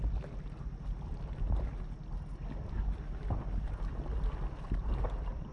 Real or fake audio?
real